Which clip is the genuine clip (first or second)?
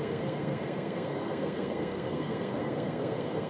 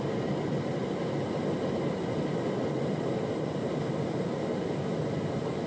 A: second